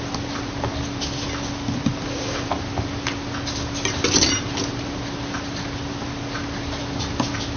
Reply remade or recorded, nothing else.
recorded